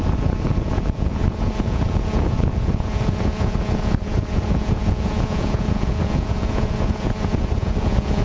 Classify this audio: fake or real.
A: fake